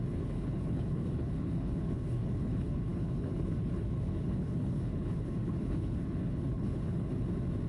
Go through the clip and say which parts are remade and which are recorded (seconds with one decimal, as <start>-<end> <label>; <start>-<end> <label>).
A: 0.0-7.1 remade; 7.1-7.7 recorded